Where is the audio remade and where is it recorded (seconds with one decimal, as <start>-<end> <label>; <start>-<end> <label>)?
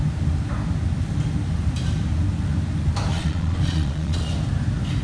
0.0-3.1 recorded; 3.1-4.3 remade; 4.3-5.0 recorded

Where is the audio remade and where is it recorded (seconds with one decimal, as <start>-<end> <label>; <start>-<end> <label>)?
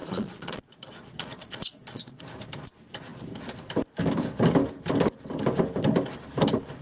0.0-2.2 remade; 2.2-6.8 recorded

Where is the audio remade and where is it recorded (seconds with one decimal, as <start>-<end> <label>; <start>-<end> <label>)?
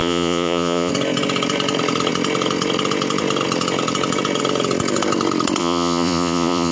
0.0-0.9 remade; 0.9-5.6 recorded; 5.6-6.7 remade